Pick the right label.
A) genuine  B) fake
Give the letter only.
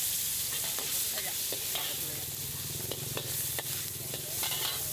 A